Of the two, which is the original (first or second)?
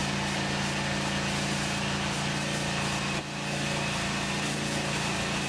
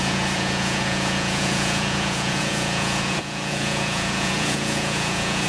first